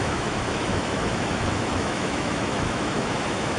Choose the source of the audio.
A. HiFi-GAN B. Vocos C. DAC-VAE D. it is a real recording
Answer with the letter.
C